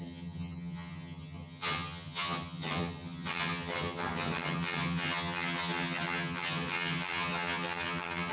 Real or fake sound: fake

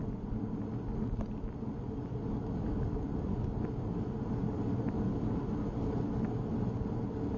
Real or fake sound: real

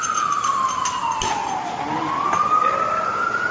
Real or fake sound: real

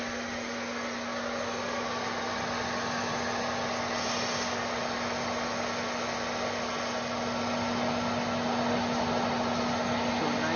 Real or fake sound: real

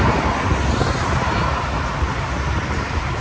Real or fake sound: real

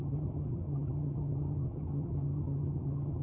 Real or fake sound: fake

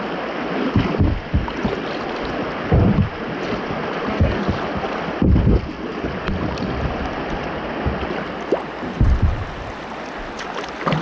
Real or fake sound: real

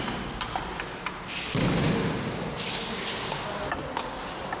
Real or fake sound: real